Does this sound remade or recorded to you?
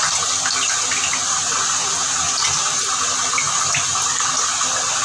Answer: recorded